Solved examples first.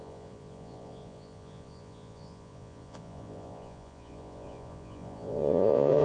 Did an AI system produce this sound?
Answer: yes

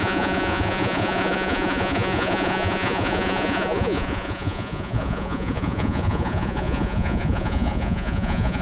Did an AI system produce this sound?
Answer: yes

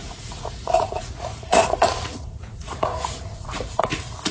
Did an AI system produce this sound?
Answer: yes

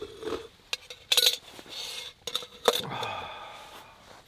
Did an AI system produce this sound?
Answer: no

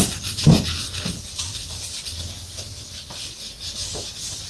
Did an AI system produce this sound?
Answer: no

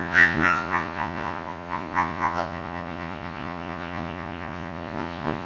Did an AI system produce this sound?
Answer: yes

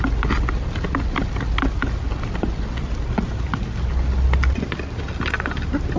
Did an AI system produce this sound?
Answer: no